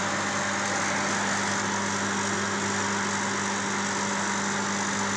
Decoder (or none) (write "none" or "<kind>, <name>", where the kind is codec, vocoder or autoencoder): none